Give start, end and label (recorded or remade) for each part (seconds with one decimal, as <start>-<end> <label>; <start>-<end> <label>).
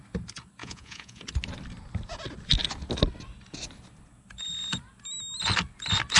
0.0-0.6 recorded; 0.6-1.2 remade; 1.2-6.2 recorded